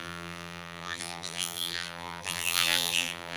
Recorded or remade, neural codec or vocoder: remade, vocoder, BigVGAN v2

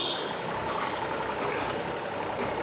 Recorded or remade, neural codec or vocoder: remade, codec, DAC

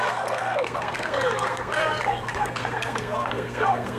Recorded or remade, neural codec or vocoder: remade, codec, SNAC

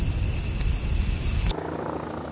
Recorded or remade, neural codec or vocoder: recorded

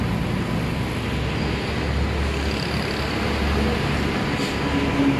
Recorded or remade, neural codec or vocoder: recorded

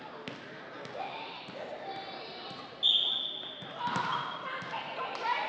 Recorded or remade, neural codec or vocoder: recorded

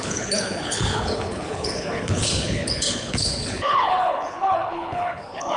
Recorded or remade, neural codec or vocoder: remade, codec, HILCodec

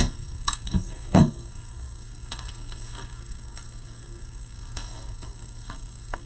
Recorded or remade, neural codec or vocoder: remade, codec, SNAC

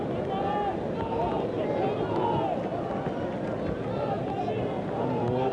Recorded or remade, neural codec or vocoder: recorded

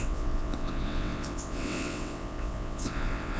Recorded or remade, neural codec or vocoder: remade, vocoder, WaveNeXt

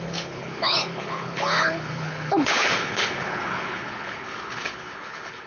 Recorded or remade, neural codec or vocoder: remade, codec, HILCodec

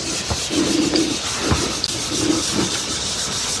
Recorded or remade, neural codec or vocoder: recorded